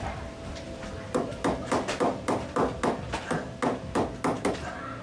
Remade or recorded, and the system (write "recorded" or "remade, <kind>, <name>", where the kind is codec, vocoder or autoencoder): recorded